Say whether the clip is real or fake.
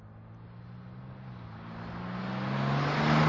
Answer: real